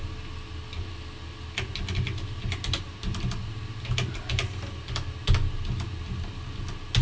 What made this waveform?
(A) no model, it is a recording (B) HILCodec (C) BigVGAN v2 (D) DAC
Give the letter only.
A